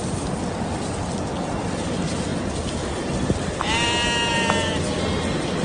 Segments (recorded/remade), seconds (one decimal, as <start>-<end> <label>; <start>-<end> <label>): 0.0-5.6 recorded